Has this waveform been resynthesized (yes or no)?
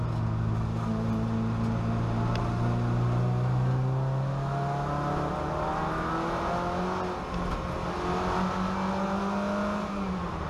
no